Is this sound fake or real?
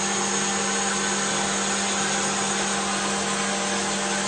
real